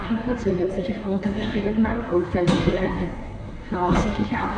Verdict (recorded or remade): remade